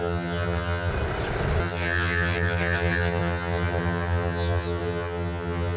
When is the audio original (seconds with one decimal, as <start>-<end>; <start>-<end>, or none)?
0.9-1.6